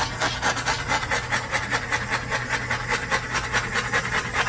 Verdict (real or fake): real